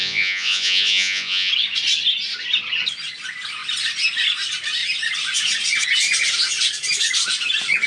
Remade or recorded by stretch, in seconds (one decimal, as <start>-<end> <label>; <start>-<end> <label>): 0.0-1.5 remade; 1.5-7.9 recorded